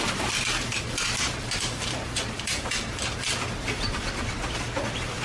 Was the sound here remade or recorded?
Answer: remade